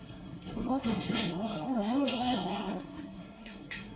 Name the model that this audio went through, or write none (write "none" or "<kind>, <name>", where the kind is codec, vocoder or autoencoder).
codec, SNAC